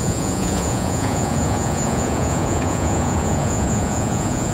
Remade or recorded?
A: remade